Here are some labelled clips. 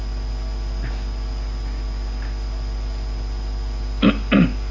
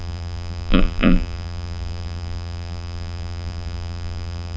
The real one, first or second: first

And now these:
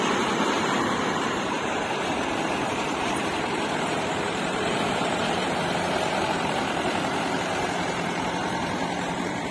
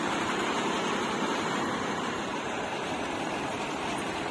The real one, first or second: second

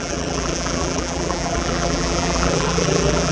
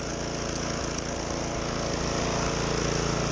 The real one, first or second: second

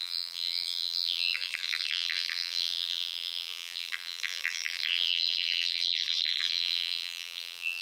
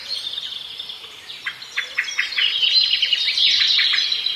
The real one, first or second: second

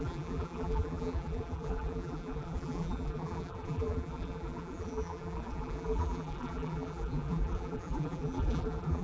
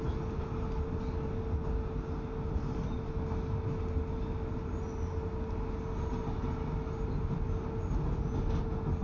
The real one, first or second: second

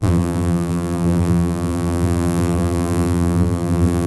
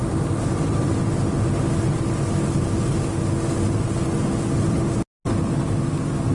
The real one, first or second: second